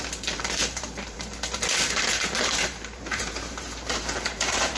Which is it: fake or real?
fake